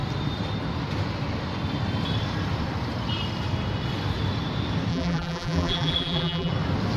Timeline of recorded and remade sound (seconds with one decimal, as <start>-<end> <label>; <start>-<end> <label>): 0.0-4.9 recorded; 4.9-6.5 remade; 6.5-7.0 recorded